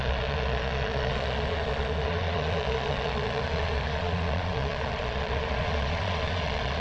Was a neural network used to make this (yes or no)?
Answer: yes